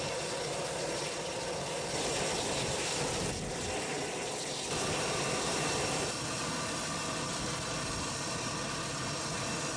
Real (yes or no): yes